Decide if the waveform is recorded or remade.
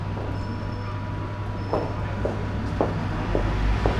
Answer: recorded